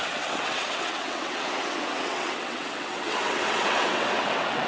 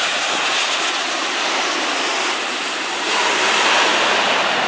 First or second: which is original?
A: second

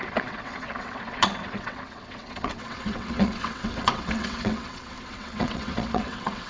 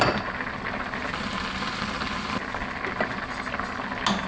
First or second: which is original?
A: second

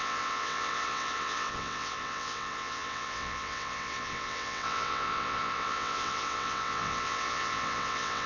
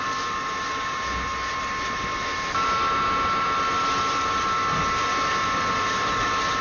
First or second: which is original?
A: second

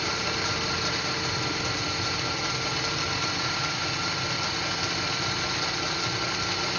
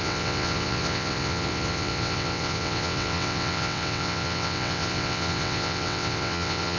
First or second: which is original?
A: first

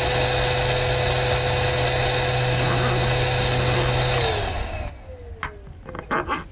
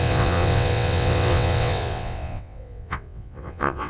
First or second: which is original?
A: first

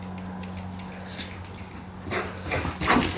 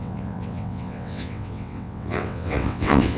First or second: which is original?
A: first